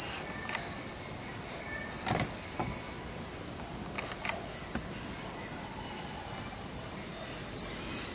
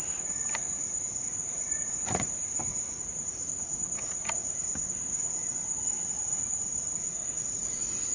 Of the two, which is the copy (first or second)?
second